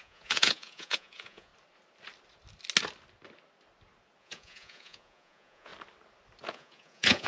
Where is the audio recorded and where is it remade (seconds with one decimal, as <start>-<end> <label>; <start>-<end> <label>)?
0.0-1.5 remade; 1.5-4.2 recorded; 4.2-5.7 remade; 5.7-6.5 recorded; 6.5-7.3 remade